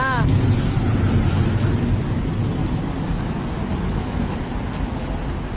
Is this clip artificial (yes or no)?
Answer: no